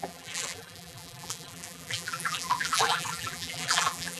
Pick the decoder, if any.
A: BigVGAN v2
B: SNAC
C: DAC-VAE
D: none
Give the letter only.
A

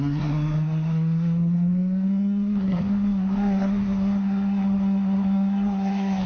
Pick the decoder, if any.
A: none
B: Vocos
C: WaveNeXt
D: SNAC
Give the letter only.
D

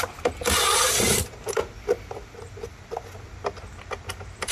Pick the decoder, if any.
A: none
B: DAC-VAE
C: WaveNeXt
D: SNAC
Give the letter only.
A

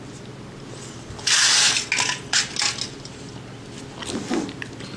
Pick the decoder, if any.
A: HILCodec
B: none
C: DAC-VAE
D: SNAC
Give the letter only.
B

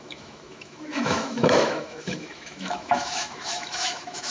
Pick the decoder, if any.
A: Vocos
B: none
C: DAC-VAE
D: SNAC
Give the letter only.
C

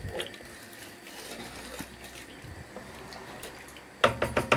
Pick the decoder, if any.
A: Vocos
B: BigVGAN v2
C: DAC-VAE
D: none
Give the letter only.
D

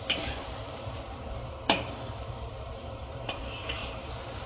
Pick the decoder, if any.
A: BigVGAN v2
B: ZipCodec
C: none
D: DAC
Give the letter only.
A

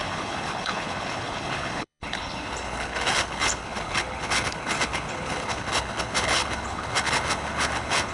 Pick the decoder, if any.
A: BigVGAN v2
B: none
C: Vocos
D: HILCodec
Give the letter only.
D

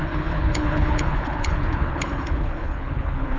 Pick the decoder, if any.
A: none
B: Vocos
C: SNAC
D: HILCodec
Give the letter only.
D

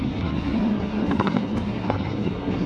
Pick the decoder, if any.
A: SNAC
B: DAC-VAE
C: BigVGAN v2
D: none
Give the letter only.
A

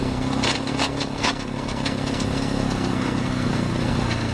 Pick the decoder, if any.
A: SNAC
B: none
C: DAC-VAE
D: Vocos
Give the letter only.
A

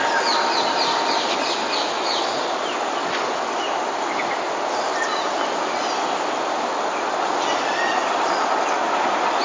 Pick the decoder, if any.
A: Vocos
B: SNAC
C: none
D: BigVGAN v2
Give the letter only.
C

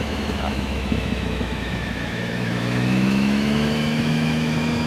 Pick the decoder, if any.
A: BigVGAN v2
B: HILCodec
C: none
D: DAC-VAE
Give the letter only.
D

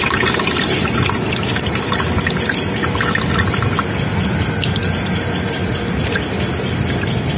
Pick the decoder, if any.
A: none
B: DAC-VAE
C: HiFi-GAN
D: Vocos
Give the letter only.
A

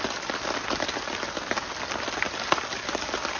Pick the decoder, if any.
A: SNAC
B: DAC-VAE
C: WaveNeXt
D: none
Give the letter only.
D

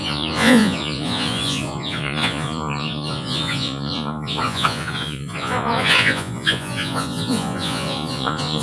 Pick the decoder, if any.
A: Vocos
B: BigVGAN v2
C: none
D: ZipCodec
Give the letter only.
A